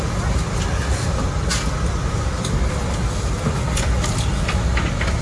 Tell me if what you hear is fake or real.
real